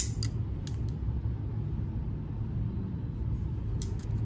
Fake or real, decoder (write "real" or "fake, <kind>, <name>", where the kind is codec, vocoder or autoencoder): real